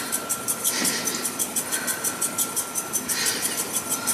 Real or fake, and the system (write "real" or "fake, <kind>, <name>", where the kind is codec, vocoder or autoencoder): real